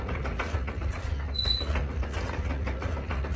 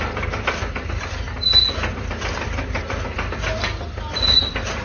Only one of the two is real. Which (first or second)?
second